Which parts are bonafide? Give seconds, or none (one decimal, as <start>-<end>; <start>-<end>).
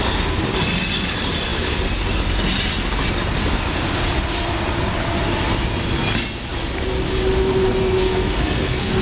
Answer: 0.0-7.8